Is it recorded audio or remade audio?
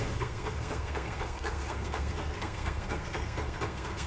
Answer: remade